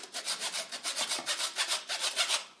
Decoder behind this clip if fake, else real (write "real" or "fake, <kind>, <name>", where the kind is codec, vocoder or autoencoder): real